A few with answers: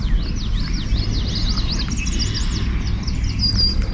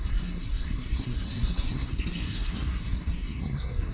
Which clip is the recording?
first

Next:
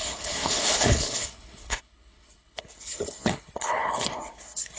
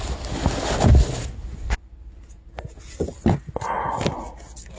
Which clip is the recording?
second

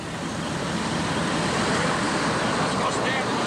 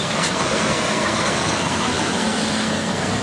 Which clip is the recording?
first